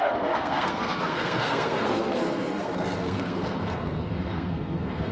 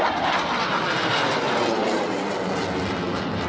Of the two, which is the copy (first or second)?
first